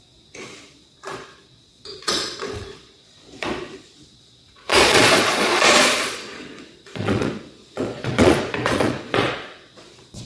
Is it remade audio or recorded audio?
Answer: remade